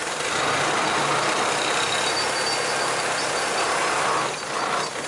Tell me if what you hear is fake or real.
real